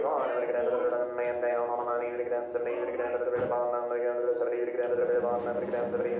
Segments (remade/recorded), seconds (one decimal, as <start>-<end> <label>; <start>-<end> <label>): 0.0-6.2 recorded